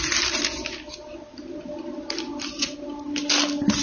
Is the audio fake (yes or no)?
no